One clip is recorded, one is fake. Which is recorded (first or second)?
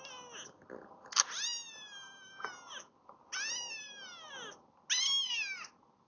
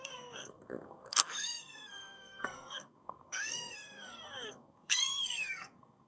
first